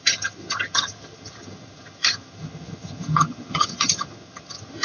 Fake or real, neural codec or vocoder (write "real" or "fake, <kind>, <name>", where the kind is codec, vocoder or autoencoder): fake, vocoder, HiFi-GAN